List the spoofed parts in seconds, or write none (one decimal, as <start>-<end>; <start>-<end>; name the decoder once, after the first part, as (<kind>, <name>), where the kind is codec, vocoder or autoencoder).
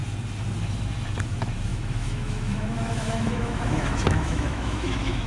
1.7-5.3 (autoencoder, DAC-VAE)